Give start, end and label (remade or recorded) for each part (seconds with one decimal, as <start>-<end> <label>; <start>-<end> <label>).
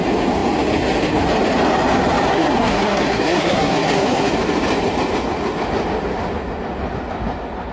0.0-2.3 recorded; 2.3-4.3 remade; 4.3-7.7 recorded